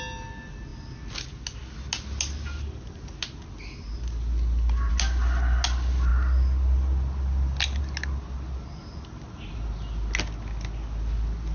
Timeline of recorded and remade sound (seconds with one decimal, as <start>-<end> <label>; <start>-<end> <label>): 0.0-11.5 recorded